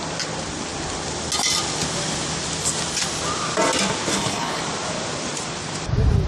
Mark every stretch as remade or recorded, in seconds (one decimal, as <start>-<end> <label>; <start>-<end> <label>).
0.0-4.1 recorded; 4.1-4.6 remade; 4.6-6.3 recorded